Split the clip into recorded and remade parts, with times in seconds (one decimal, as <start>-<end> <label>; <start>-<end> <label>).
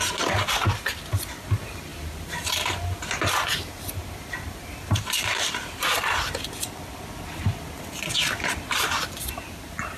0.0-1.9 recorded; 1.9-6.3 remade; 6.3-10.0 recorded